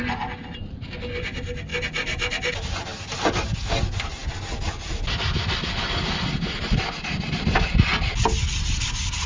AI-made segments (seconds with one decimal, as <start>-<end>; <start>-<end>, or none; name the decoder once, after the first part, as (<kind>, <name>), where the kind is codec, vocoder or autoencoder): none